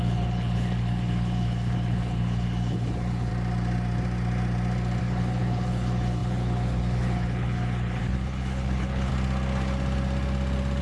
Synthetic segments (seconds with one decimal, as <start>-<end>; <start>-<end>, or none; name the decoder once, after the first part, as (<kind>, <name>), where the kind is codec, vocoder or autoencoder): 0.0-3.3 (codec, HILCodec); 5.0-9.1